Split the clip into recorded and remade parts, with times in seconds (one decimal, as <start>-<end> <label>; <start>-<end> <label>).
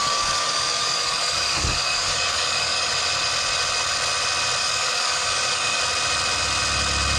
0.0-2.9 remade; 2.9-4.6 recorded; 4.6-5.8 remade; 5.8-7.2 recorded